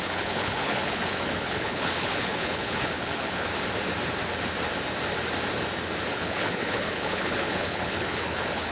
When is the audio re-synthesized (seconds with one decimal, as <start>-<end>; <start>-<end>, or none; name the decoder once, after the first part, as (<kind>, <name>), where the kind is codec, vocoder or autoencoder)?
0.0-3.5 (codec, HILCodec); 6.1-8.7